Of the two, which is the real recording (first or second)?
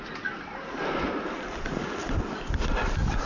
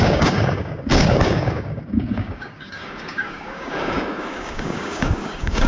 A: first